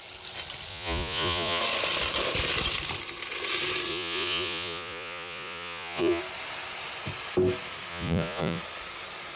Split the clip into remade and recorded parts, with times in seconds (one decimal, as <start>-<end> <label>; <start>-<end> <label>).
0.0-0.7 recorded; 0.7-1.6 remade; 1.6-3.9 recorded; 3.9-6.2 remade; 6.2-7.9 recorded; 7.9-8.6 remade; 8.6-9.4 recorded